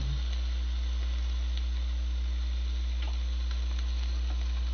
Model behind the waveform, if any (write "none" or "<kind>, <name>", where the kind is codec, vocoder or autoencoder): none